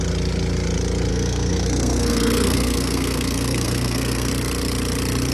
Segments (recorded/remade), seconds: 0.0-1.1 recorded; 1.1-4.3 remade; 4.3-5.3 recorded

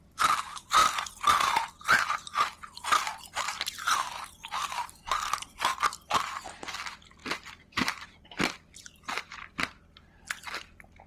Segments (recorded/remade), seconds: 0.0-0.8 recorded; 0.8-1.7 remade; 1.7-3.5 recorded; 3.5-4.8 remade; 4.8-7.2 recorded; 7.2-9.8 remade; 9.8-11.1 recorded

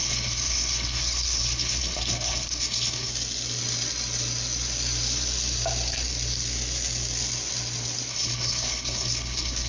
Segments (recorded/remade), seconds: 0.0-3.1 remade; 3.1-8.1 recorded; 8.1-9.7 remade